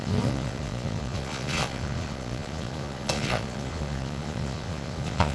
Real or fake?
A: fake